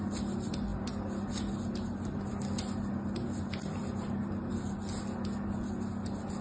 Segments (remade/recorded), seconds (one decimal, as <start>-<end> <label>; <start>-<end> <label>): 0.0-6.4 recorded